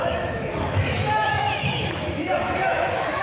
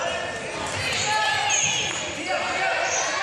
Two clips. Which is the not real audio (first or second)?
first